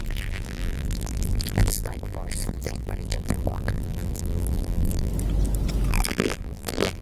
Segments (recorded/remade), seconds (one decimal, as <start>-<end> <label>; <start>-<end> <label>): 0.0-5.1 remade; 5.1-5.9 recorded; 5.9-7.0 remade